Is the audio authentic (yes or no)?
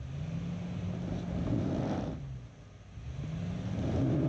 yes